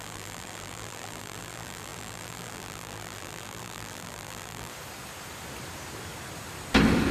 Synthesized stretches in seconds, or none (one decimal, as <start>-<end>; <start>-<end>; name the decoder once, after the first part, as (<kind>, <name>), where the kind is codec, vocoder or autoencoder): 0.0-4.7 (vocoder, BigVGAN v2)